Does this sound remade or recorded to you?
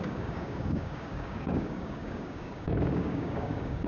remade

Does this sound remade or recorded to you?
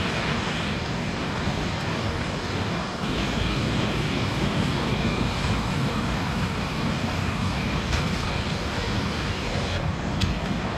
remade